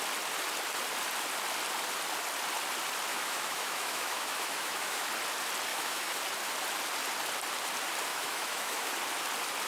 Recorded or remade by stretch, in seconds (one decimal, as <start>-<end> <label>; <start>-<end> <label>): 0.0-3.1 recorded; 3.1-5.1 remade; 5.1-5.7 recorded; 5.7-6.2 remade; 6.2-8.1 recorded; 8.1-8.9 remade; 8.9-9.7 recorded